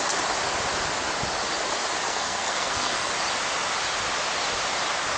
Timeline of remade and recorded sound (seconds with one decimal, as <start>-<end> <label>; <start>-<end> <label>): 0.0-2.1 recorded; 2.1-3.1 remade; 3.1-5.2 recorded